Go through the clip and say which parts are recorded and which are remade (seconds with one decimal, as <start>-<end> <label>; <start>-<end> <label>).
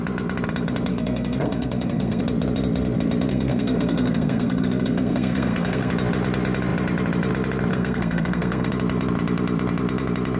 0.0-0.9 recorded; 0.9-2.2 remade; 2.2-3.3 recorded; 3.3-5.9 remade; 5.9-7.7 recorded; 7.7-8.7 remade; 8.7-10.4 recorded